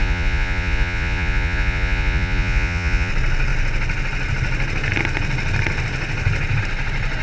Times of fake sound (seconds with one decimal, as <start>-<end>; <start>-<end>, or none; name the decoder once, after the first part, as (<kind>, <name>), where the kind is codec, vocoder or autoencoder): 0.0-3.1 (vocoder, Vocos)